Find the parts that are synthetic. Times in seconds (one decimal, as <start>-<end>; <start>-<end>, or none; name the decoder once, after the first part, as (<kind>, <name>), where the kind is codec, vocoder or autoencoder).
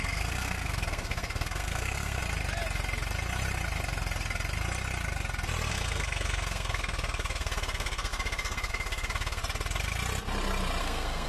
0.0-2.2 (codec, SNAC); 5.7-9.4; 10.8-11.3